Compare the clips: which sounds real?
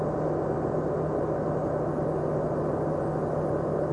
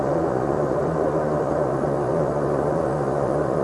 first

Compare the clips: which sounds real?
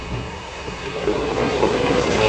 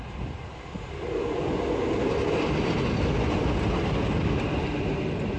second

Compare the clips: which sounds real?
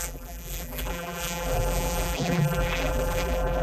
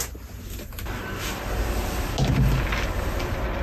second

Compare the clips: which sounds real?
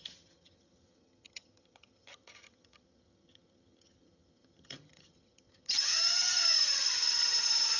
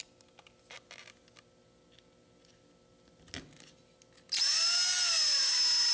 second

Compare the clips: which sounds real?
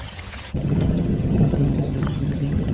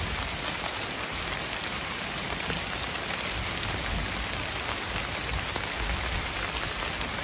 second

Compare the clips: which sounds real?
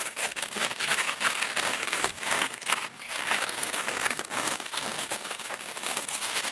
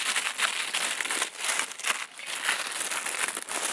second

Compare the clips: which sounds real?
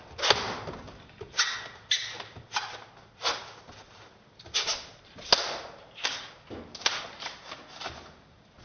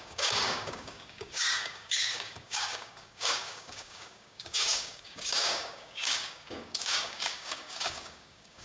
first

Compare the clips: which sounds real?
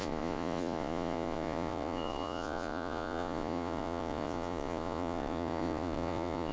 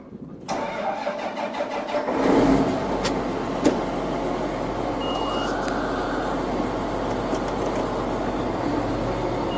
second